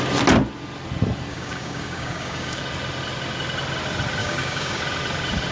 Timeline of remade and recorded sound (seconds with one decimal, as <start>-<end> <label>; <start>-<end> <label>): 0.0-1.3 recorded; 1.3-2.6 remade; 2.6-4.2 recorded; 4.2-4.8 remade; 4.8-5.5 recorded